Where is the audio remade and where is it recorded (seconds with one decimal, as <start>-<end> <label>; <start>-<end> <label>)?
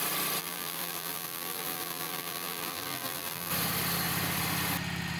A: 0.0-0.4 recorded; 0.4-3.5 remade; 3.5-5.2 recorded